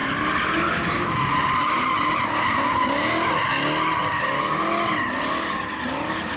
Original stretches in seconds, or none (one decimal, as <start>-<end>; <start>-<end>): 0.0-6.4